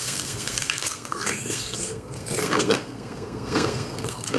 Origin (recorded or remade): remade